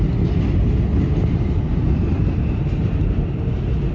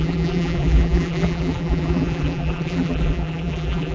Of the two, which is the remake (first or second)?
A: second